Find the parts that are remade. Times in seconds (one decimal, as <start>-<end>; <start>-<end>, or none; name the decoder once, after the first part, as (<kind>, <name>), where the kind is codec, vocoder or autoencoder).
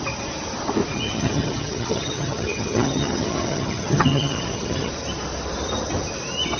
0.9-4.9 (vocoder, HiFi-GAN)